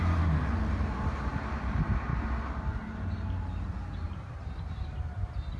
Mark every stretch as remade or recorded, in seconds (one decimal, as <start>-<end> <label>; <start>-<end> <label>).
0.0-5.6 recorded